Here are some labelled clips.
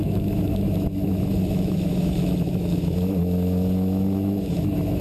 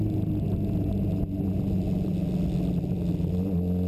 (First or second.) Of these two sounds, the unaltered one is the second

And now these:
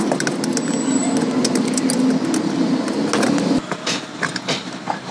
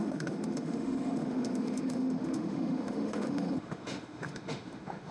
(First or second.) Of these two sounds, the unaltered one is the first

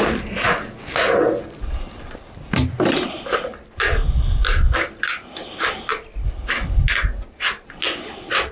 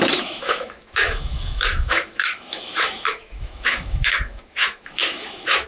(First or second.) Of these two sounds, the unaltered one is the first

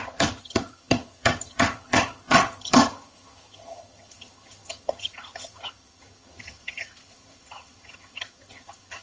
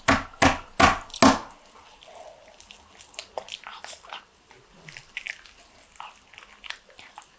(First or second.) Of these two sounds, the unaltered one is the second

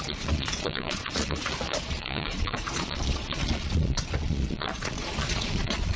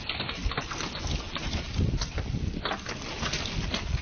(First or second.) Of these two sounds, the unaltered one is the second